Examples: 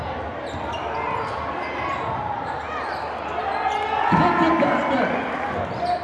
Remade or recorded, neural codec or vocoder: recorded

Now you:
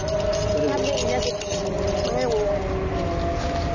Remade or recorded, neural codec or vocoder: recorded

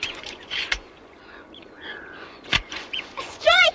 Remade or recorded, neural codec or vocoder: remade, vocoder, Vocos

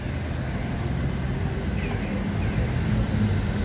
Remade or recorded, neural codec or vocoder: recorded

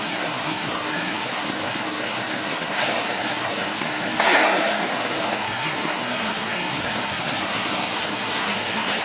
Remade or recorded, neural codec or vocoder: remade, codec, SNAC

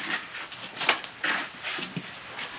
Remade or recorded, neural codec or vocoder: recorded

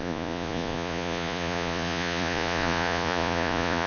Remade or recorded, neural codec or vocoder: remade, vocoder, Vocos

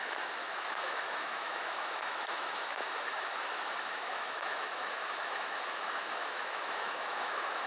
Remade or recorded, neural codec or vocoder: remade, autoencoder, DAC-VAE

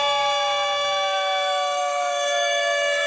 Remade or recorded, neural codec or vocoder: remade, autoencoder, DAC-VAE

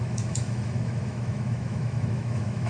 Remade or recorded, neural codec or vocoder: remade, autoencoder, DAC-VAE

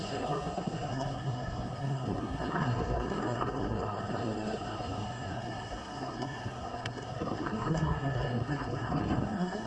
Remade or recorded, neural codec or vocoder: remade, codec, SNAC